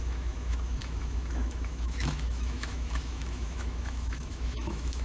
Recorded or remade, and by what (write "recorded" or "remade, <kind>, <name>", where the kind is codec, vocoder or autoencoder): remade, autoencoder, DAC-VAE